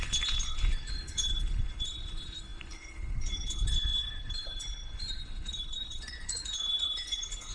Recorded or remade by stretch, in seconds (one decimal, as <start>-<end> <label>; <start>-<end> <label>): 0.0-7.5 remade